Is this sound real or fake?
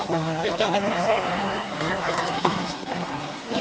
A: fake